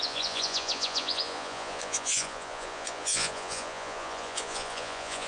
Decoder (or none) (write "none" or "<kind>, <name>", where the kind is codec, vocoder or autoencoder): vocoder, Vocos